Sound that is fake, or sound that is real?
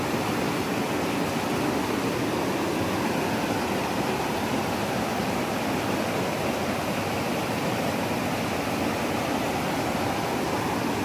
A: real